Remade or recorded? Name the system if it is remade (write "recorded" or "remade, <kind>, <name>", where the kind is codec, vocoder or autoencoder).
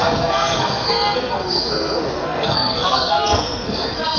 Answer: remade, codec, SNAC